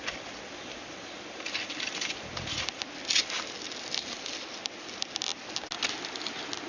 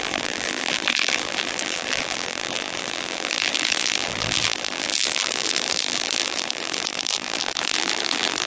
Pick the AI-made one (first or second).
second